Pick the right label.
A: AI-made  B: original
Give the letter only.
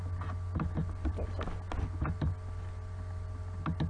B